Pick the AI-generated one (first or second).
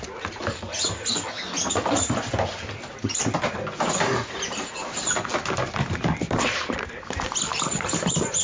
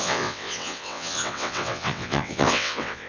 second